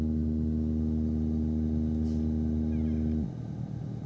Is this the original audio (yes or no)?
yes